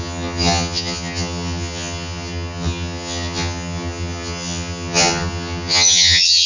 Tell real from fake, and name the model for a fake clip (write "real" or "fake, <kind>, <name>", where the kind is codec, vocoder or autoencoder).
fake, vocoder, HiFi-GAN